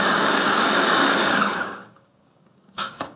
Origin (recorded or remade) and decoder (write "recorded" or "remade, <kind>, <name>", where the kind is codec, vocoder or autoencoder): remade, codec, DAC